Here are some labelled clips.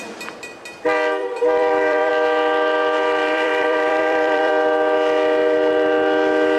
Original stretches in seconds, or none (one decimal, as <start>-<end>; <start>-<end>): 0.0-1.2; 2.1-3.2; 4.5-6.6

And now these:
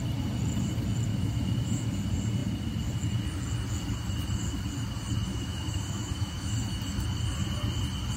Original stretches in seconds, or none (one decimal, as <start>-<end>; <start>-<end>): 0.0-1.1; 1.8-5.3; 6.8-8.2

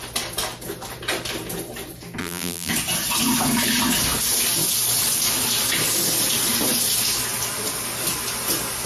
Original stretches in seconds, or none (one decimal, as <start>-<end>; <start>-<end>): 0.0-2.2; 2.7-8.9

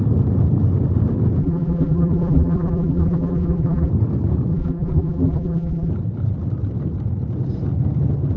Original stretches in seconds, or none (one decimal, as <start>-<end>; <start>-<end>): 0.0-1.4; 3.9-4.5; 5.9-8.4

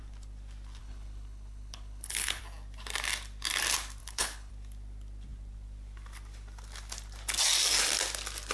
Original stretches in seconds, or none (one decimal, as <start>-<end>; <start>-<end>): 0.0-0.8; 2.4-4.0; 4.5-8.5

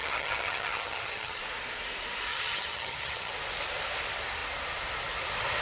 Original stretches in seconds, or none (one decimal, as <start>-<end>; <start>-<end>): 1.4-2.3; 3.3-5.6

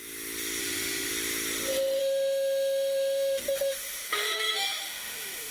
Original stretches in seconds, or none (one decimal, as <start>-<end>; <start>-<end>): 0.0-0.6; 1.1-2.0

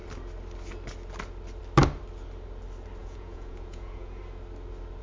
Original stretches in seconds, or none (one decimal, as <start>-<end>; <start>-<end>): 0.0-3.0; 4.2-5.0